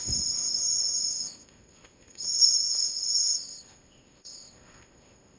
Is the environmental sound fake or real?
fake